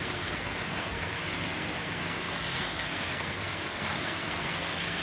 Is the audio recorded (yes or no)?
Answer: no